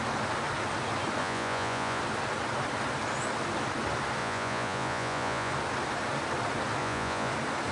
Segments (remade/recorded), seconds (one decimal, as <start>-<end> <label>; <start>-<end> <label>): 0.0-1.2 recorded; 1.2-2.0 remade; 2.0-4.2 recorded; 4.2-5.5 remade; 5.5-6.8 recorded; 6.8-7.3 remade; 7.3-7.7 recorded